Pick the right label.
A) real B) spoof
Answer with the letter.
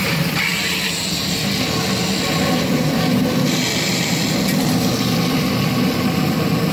A